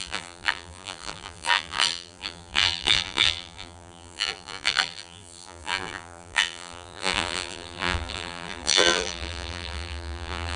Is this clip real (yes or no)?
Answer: no